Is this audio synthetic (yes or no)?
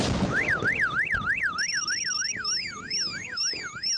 no